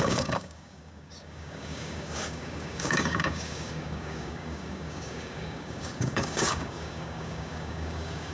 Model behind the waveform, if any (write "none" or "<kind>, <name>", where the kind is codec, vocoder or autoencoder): codec, DAC